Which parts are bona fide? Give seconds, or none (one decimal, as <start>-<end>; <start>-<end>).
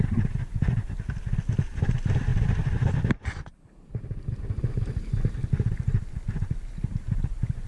0.0-7.7